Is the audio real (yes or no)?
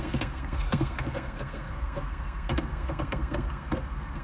no